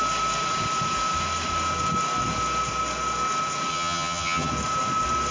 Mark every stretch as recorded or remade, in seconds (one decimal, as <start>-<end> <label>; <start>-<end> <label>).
0.0-3.7 recorded; 3.7-4.5 remade; 4.5-5.3 recorded